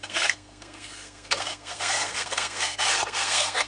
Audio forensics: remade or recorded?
remade